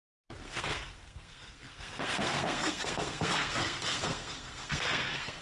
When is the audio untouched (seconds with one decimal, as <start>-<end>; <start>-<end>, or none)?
none